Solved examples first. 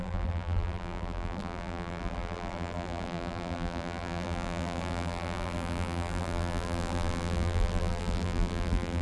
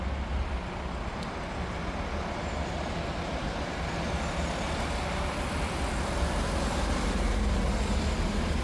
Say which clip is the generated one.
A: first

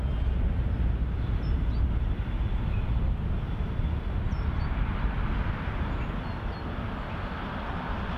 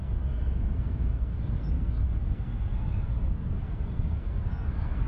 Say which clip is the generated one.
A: second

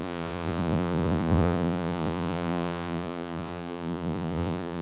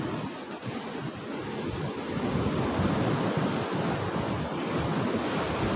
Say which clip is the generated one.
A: first